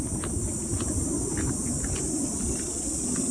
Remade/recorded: recorded